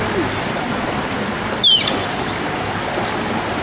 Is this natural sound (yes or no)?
yes